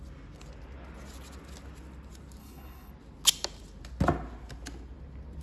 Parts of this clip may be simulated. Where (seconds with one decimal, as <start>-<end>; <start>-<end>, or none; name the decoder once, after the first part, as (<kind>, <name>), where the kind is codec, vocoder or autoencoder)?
2.4-2.9 (codec, HILCodec)